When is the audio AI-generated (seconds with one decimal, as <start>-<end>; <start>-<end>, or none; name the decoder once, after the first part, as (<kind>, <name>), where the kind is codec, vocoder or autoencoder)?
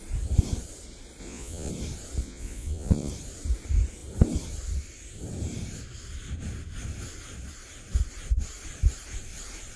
1.2-1.7 (vocoder, Vocos); 2.2-3.1